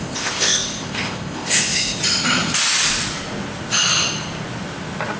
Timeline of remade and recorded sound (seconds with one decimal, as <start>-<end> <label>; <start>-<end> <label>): 0.0-2.0 remade; 2.0-5.2 recorded